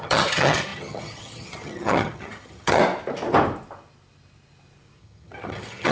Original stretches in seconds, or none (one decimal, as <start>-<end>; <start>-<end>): 2.8-5.0